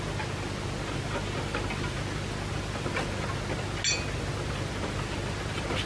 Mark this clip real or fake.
real